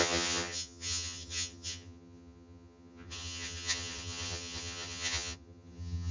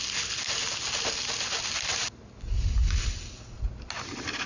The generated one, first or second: first